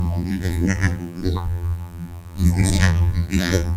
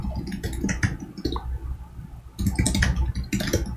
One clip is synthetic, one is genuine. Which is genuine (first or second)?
second